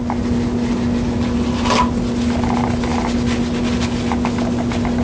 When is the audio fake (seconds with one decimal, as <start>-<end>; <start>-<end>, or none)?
none